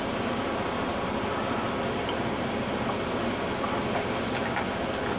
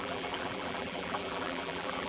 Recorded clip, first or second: first